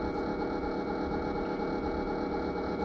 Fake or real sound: real